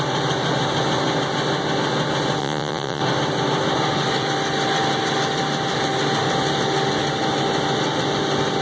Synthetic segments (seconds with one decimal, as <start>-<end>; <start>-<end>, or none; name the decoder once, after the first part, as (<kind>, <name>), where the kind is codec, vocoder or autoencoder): 2.4-3.0 (vocoder, Vocos)